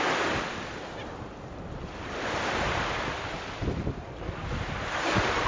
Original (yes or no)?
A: yes